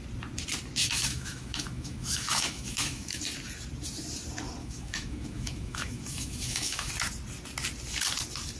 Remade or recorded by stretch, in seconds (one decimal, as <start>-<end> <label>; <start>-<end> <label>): 0.0-0.8 recorded; 0.8-3.2 remade; 3.2-4.6 recorded; 4.6-6.9 remade; 6.9-8.6 recorded